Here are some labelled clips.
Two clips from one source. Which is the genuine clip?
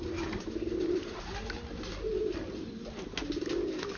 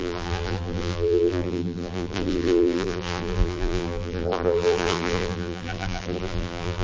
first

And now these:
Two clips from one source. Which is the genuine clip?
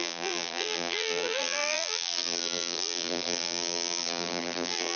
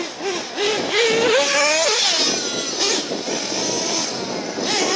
second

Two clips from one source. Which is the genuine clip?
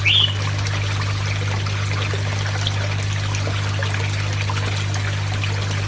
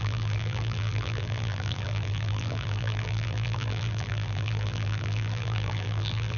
first